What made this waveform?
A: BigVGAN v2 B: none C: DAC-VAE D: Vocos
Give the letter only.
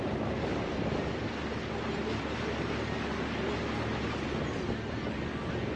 B